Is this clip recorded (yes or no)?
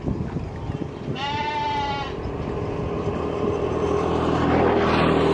yes